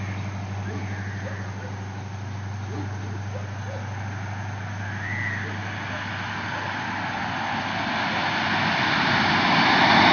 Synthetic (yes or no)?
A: no